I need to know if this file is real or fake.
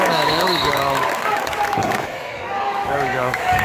fake